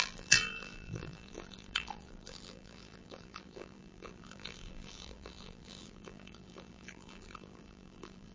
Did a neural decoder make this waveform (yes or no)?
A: yes